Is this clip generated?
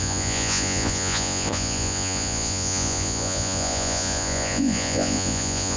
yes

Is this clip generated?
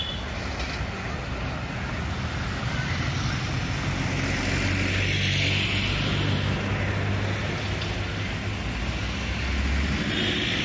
no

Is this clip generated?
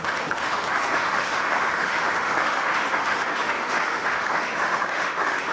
yes